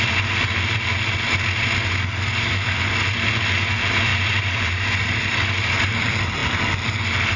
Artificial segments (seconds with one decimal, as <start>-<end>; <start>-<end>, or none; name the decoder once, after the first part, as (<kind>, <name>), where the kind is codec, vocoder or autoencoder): 4.1-5.9 (vocoder, BigVGAN v2)